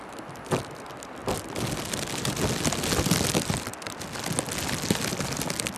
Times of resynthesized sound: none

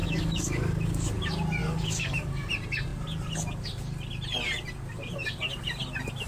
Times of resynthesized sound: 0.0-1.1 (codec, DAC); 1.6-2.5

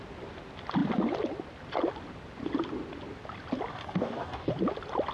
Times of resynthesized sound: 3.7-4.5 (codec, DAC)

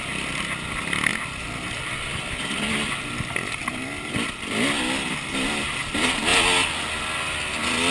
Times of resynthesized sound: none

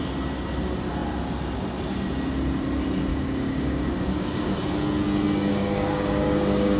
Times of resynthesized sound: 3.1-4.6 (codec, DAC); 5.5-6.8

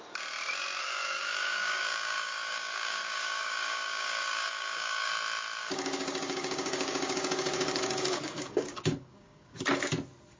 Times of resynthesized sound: 0.8-5.1 (codec, DAC); 5.6-9.6